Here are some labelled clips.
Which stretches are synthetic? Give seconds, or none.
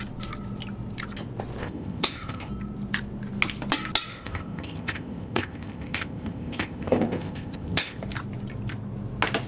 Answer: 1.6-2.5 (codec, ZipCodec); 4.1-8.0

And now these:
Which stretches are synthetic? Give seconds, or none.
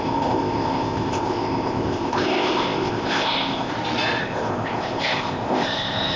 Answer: 0.0-3.7 (codec, ZipCodec); 4.2-6.2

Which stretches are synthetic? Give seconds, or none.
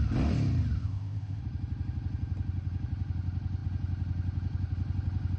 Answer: 0.8-1.4 (codec, ZipCodec)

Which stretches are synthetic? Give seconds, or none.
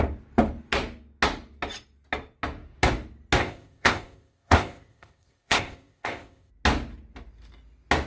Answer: 3.4-6.5 (codec, ZipCodec)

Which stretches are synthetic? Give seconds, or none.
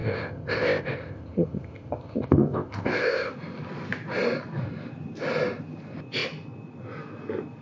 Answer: 0.0-3.3 (codec, ZipCodec)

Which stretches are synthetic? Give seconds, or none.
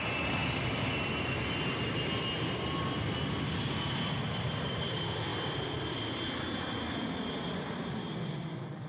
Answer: none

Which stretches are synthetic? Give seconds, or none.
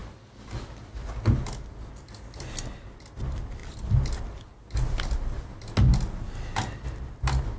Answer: none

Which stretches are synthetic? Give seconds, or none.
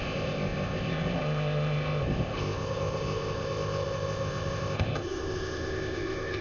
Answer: 0.0-6.4 (codec, ZipCodec)